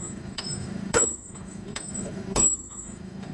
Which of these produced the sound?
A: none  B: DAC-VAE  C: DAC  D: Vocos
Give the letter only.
B